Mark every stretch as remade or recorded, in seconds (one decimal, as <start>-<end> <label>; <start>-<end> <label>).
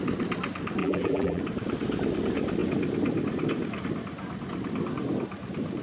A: 0.0-0.8 recorded; 0.8-1.4 remade; 1.4-5.8 recorded